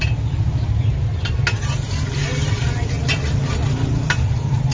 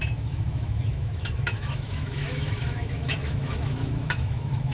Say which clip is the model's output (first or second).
second